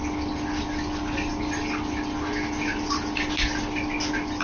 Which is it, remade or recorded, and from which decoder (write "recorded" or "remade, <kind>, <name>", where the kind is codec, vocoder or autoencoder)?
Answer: recorded